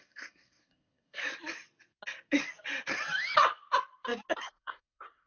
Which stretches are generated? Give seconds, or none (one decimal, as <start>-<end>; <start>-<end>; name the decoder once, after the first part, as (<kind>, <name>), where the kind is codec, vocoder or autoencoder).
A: 0.0-1.2 (codec, SNAC); 4.4-5.3